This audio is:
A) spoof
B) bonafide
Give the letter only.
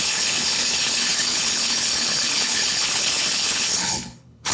A